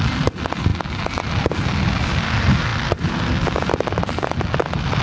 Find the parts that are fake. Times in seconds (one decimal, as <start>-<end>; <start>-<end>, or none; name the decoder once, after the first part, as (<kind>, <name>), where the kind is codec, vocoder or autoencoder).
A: none